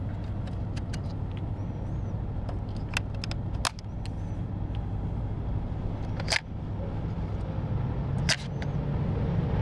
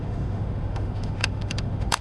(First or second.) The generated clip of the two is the second